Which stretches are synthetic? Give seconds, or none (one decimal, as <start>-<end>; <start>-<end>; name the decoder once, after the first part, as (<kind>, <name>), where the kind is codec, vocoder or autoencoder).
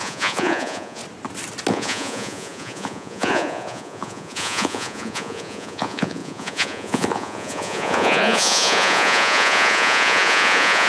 0.0-1.0 (vocoder, Vocos); 1.7-10.9